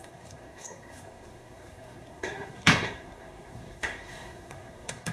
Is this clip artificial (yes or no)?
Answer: yes